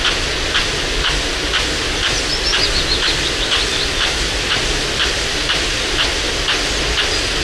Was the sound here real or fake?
real